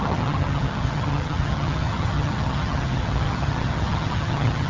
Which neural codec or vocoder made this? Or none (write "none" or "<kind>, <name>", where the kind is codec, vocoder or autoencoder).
vocoder, HiFi-GAN